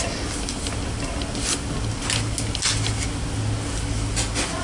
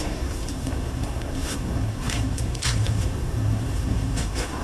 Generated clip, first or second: second